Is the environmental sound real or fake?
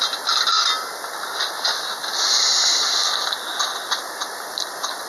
real